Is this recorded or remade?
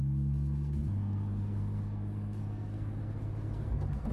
remade